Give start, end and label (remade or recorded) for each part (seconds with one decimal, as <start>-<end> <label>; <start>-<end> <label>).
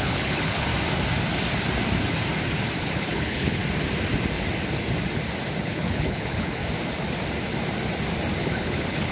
0.0-0.7 remade; 0.7-2.8 recorded; 2.8-3.6 remade; 3.6-5.6 recorded; 5.6-6.6 remade; 6.6-8.4 recorded; 8.4-9.1 remade